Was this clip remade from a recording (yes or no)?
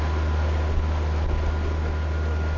no